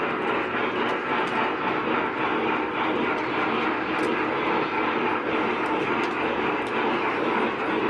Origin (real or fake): real